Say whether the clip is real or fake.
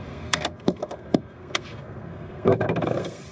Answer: fake